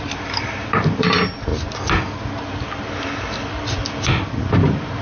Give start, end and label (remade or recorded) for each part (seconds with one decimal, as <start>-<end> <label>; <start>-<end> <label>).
0.0-1.5 remade; 1.5-4.5 recorded; 4.5-5.0 remade